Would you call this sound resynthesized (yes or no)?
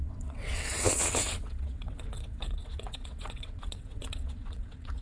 yes